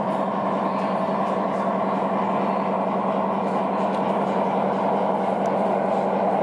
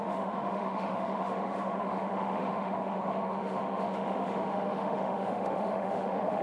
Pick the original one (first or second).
first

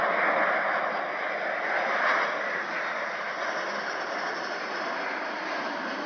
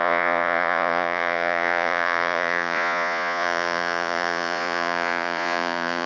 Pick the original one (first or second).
first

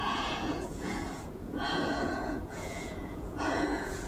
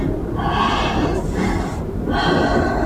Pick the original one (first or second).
second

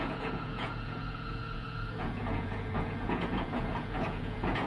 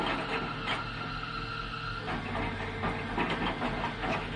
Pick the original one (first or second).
second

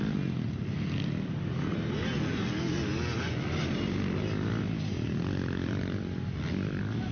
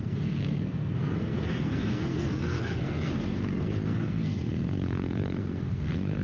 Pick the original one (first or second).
first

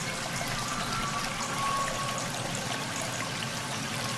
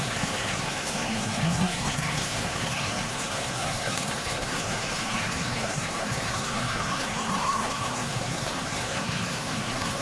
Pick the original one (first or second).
first